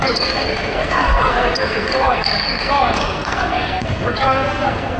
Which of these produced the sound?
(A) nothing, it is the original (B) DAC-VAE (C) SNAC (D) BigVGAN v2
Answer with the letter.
C